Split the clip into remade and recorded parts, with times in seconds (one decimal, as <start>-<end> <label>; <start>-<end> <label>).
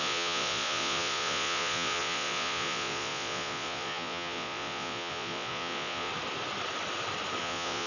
0.0-6.1 remade; 6.1-7.4 recorded; 7.4-7.9 remade